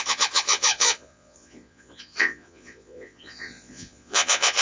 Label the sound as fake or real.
fake